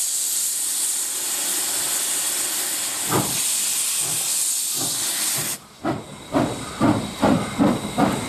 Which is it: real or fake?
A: real